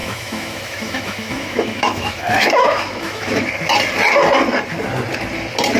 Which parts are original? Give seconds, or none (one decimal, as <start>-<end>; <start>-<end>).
3.5-5.8